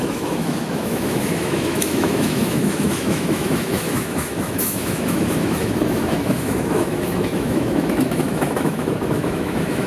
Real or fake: fake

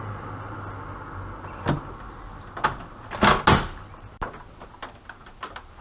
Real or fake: real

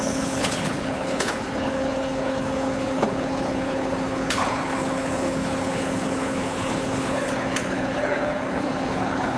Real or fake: fake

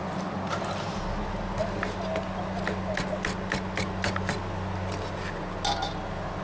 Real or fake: real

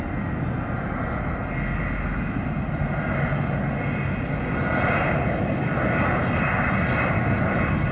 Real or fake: real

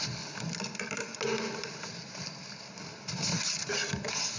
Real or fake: real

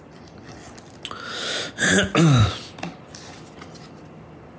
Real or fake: real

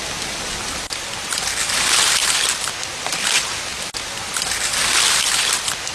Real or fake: real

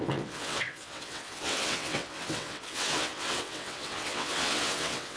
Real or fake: fake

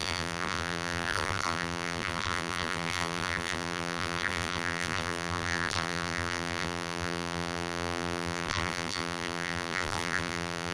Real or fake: fake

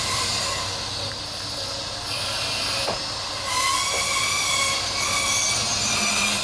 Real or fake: real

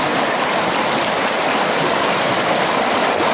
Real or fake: real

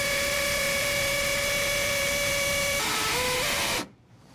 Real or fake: fake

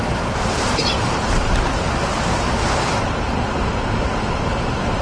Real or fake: real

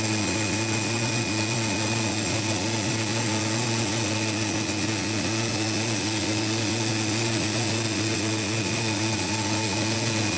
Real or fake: fake